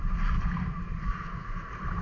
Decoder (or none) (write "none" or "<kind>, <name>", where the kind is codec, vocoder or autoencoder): none